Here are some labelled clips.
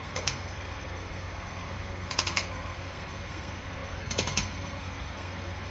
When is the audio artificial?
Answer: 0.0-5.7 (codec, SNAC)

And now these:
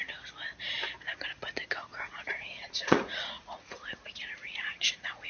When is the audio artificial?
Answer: 1.9-5.3 (vocoder, Vocos)

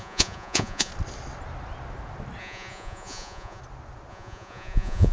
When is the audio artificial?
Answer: 0.0-0.9 (vocoder, Vocos); 2.4-3.6; 4.1-5.1

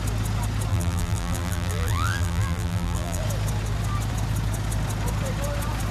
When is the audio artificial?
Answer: 0.7-3.2 (vocoder, BigVGAN v2)